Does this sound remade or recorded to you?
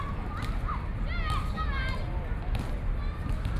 recorded